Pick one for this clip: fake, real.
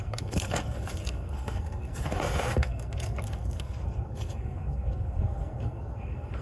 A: fake